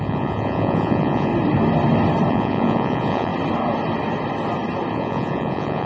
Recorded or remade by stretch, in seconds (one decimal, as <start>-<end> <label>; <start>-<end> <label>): 0.0-1.3 remade; 1.3-2.3 recorded; 2.3-3.3 remade; 3.3-4.9 recorded; 4.9-5.9 remade